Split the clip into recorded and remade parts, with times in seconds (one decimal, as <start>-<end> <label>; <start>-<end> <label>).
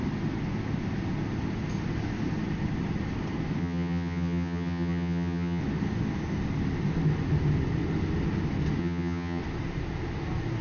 0.0-3.6 recorded; 3.6-5.6 remade; 5.6-8.8 recorded; 8.8-9.4 remade; 9.4-10.6 recorded